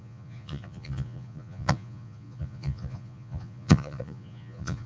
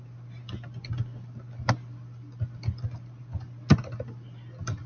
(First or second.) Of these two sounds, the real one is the second